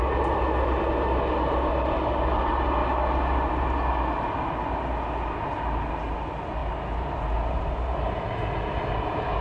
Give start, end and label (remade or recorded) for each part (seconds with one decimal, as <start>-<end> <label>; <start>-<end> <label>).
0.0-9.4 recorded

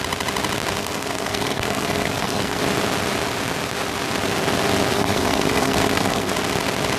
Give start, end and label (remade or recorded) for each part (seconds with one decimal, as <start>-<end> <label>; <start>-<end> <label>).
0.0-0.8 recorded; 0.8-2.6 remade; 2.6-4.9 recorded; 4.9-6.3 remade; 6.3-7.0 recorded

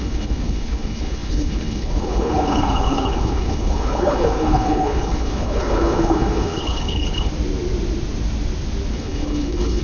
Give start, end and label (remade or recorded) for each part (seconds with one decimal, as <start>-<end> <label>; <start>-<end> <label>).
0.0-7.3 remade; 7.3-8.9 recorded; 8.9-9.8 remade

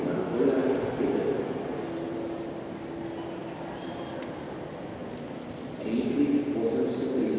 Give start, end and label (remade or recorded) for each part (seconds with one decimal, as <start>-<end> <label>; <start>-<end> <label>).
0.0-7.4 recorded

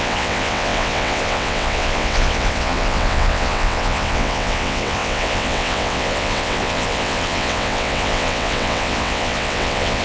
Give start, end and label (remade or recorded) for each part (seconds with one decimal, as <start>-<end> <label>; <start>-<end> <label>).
0.0-10.0 remade